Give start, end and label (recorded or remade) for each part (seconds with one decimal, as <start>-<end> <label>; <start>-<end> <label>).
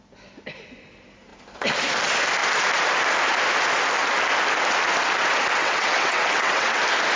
0.0-5.6 recorded; 5.6-6.8 remade; 6.8-7.2 recorded